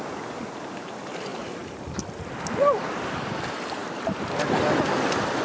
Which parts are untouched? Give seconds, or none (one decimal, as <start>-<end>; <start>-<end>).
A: 0.0-5.4